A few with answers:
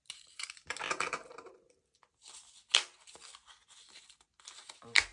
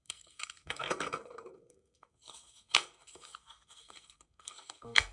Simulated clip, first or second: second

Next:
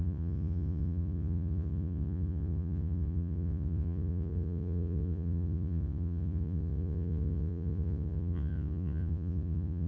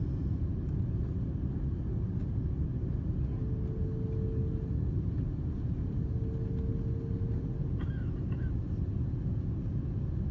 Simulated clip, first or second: first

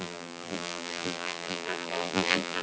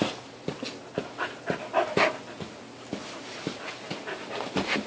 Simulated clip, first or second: first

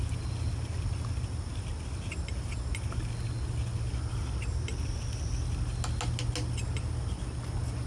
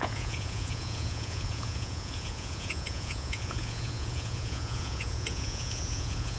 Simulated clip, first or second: second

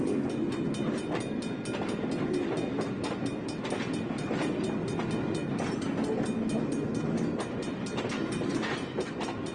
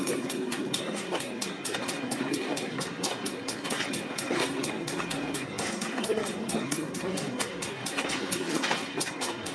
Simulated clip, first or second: second